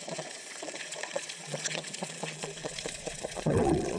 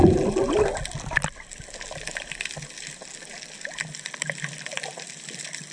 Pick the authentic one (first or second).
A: second